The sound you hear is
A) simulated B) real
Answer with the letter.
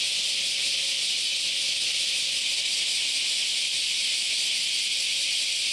B